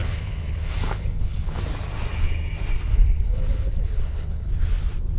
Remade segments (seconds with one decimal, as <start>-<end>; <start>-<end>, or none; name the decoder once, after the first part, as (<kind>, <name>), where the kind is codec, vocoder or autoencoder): 0.0-1.6 (codec, HILCodec); 2.9-4.5